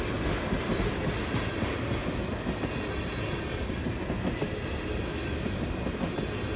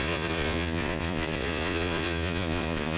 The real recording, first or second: first